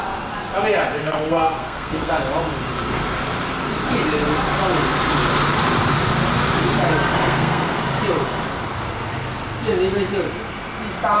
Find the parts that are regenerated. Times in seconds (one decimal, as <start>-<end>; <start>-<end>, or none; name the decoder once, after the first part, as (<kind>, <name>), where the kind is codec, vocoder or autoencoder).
1.0-2.1 (codec, SNAC); 7.2-7.8